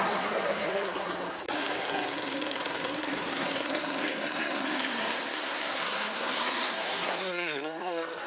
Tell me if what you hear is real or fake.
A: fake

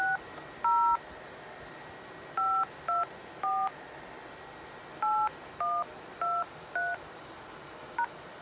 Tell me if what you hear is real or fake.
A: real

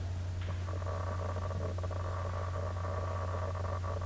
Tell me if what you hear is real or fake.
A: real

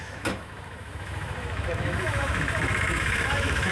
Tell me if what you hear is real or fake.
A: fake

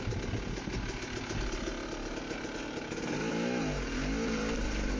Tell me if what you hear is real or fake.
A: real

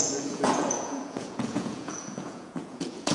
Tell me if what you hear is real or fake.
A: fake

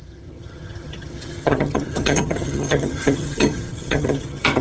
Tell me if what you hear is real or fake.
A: fake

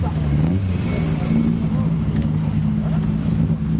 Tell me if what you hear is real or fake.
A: real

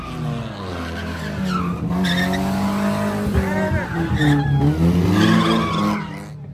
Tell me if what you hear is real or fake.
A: real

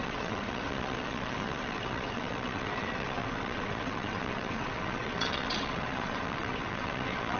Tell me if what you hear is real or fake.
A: fake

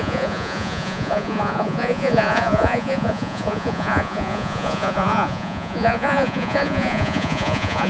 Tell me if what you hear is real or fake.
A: fake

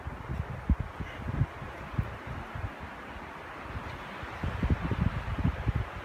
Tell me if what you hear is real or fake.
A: real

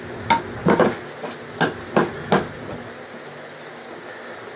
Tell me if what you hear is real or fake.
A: real